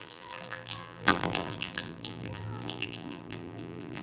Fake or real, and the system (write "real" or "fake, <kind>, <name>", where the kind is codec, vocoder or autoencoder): fake, vocoder, BigVGAN v2